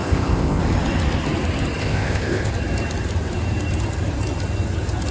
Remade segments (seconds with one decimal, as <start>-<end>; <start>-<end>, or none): 0.0-0.6; 1.8-2.5